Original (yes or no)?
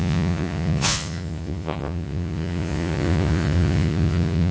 no